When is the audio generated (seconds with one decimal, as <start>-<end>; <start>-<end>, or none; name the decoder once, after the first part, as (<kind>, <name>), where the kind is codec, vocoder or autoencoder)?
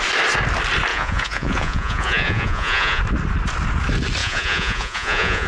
0.9-3.0 (vocoder, Vocos); 4.2-5.5